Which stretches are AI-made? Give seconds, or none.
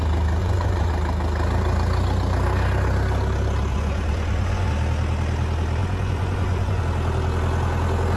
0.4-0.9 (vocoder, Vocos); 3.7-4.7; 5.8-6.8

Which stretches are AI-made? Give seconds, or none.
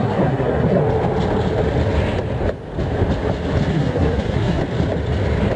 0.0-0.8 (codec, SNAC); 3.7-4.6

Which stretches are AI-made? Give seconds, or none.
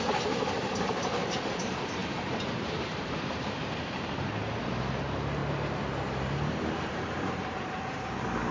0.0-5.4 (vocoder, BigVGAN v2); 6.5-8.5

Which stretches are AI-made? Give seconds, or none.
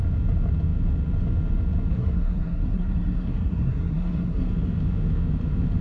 1.9-4.5 (codec, SNAC)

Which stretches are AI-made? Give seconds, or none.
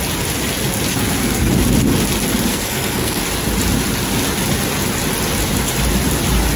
0.9-1.5 (codec, SNAC); 2.5-3.2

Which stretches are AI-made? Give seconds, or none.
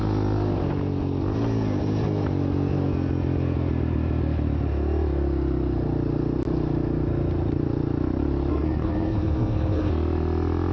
8.5-9.9 (codec, SNAC)